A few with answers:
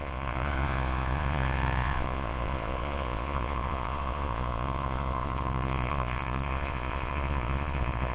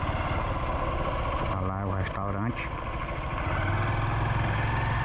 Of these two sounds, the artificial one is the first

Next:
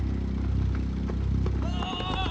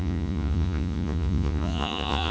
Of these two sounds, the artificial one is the second